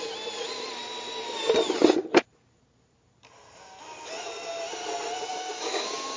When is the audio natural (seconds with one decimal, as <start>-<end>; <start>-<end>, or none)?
0.0-5.3